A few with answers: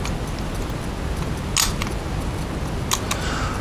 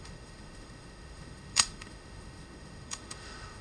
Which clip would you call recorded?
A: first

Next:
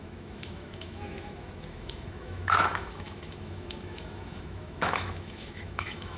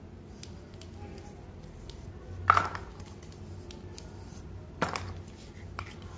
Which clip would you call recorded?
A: second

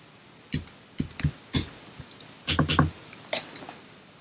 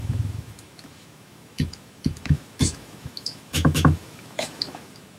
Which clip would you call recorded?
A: first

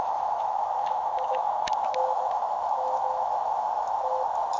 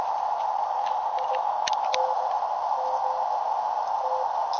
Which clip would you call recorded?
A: second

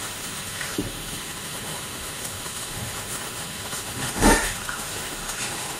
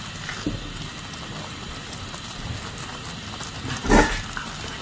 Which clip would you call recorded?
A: second